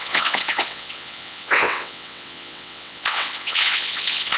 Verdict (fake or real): fake